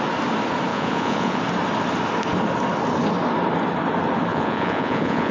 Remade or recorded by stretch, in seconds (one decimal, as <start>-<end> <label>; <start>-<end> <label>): 0.0-0.7 recorded; 0.7-1.4 remade; 1.4-4.3 recorded; 4.3-5.3 remade